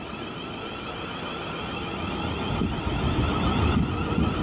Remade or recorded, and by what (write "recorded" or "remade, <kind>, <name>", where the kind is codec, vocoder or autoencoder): recorded